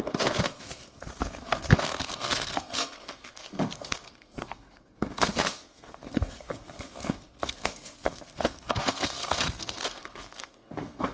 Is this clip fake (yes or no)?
yes